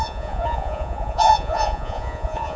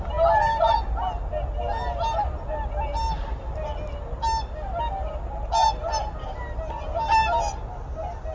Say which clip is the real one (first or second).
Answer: second